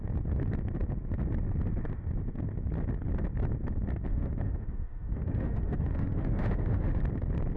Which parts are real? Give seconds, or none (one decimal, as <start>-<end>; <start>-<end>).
0.0-4.1; 7.0-7.6